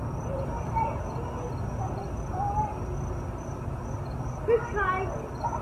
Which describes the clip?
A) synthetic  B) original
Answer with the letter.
B